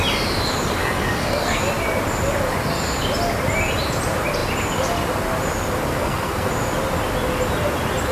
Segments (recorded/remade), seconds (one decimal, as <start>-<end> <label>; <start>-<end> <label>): 0.0-0.8 recorded; 0.8-1.6 remade; 1.6-5.9 recorded; 5.9-6.5 remade; 6.5-8.1 recorded